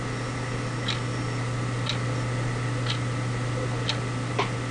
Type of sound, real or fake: real